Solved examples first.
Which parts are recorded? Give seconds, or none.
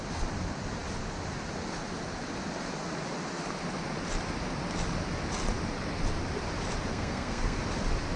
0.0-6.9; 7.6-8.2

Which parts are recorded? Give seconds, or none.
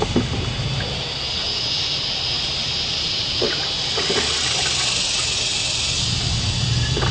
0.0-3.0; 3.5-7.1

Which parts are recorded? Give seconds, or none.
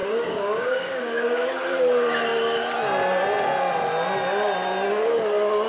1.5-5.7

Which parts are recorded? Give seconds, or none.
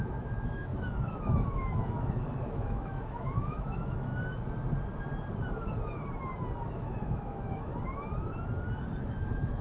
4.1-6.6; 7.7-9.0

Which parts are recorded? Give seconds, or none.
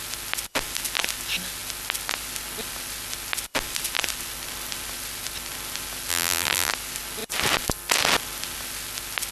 0.0-6.1; 6.7-9.3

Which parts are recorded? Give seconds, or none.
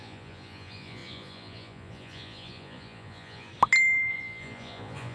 3.5-4.1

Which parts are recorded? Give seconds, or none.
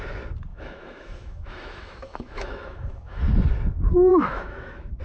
0.0-0.5; 3.2-4.1